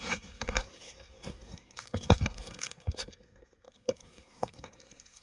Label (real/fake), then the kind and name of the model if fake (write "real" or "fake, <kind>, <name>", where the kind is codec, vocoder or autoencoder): fake, codec, SNAC